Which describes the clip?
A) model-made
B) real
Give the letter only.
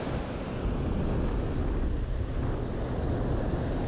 B